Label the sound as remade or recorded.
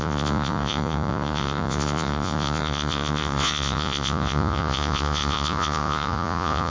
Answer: remade